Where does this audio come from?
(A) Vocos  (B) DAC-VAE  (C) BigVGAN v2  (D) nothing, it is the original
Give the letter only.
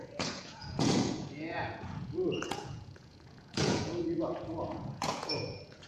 A